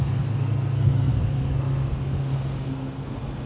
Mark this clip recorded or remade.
remade